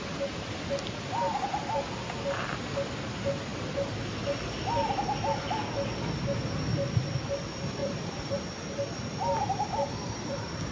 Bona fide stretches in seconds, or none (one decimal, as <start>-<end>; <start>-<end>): 0.0-7.8; 8.4-9.5

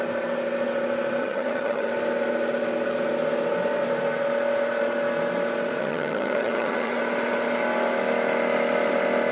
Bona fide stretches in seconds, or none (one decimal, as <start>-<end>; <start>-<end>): 0.0-1.2; 1.9-5.8; 7.0-9.3